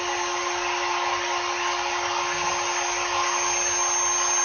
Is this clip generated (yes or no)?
no